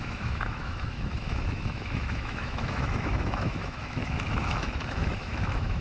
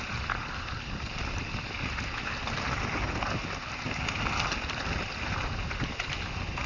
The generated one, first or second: first